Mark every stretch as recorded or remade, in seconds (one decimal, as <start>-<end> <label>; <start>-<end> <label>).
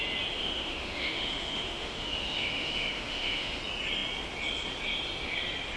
0.0-0.4 recorded; 0.4-3.6 remade; 3.6-5.8 recorded